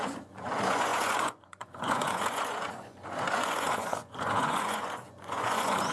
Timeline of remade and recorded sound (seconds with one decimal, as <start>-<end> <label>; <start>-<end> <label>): 0.0-5.9 remade